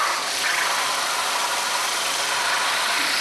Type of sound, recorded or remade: recorded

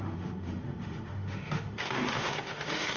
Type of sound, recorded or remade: remade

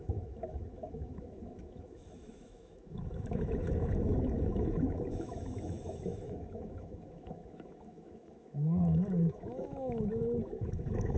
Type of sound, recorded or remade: remade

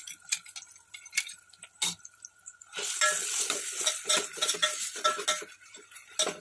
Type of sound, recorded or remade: recorded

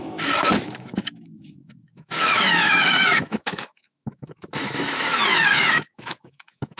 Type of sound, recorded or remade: remade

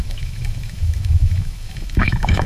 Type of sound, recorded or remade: remade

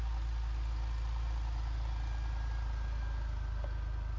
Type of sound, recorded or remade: recorded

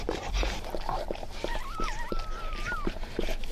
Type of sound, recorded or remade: recorded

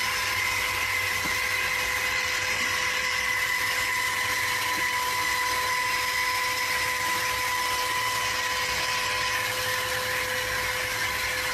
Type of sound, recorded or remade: recorded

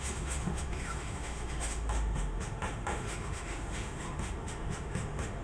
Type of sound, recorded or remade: remade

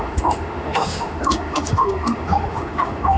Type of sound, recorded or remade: remade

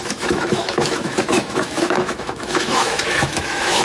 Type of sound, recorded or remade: remade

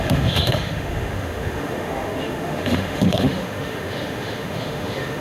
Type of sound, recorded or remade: remade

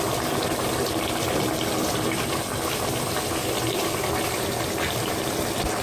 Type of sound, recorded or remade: recorded